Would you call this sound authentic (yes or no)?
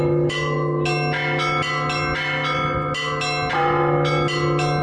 yes